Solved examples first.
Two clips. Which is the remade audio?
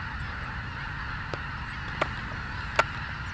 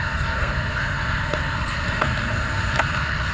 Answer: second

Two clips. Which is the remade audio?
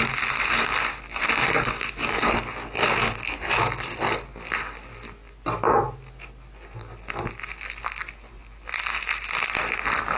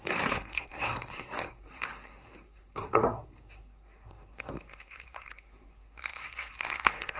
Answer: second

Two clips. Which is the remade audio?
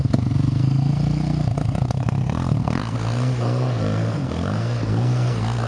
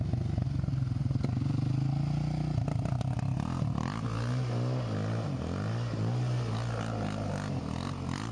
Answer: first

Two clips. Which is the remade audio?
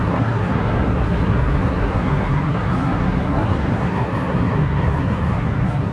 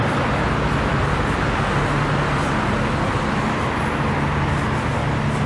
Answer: first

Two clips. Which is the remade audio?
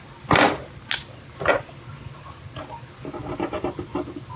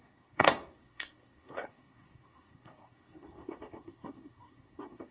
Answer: second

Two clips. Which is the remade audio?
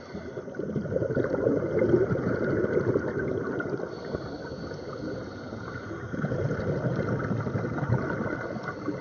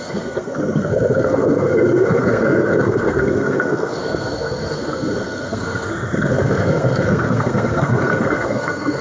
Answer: second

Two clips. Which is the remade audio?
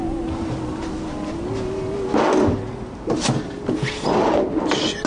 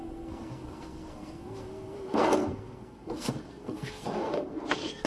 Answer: second